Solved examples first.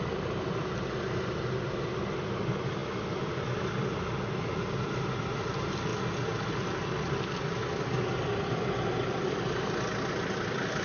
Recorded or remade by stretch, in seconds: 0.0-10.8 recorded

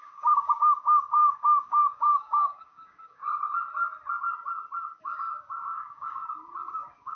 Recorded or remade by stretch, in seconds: 0.0-3.2 remade; 3.2-5.0 recorded; 5.0-6.2 remade; 6.2-6.7 recorded; 6.7-7.2 remade

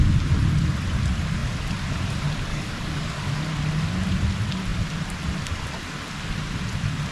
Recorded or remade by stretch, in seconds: 0.0-2.5 recorded; 2.5-3.4 remade; 3.4-7.1 recorded

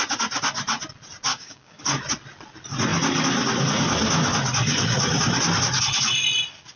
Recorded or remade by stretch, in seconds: 0.0-1.3 recorded; 1.3-1.8 remade; 1.8-6.8 recorded

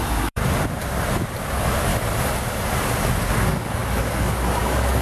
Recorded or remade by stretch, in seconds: 0.0-0.4 remade; 0.4-1.4 recorded; 1.4-1.9 remade; 1.9-3.3 recorded; 3.3-5.0 remade